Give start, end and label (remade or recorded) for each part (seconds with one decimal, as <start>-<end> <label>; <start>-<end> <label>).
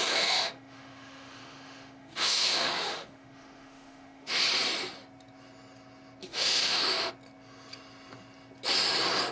0.0-4.4 remade; 4.4-6.2 recorded; 6.2-7.1 remade; 7.1-9.3 recorded